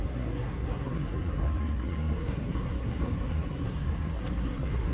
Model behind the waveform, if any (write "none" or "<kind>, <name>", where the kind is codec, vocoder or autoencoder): codec, SNAC